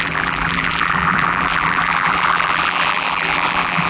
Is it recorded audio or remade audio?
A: remade